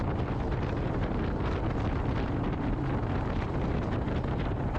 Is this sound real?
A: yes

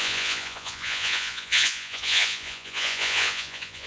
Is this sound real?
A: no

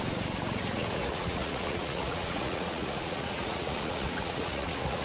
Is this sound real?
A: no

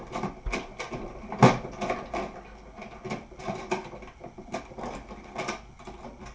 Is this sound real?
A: yes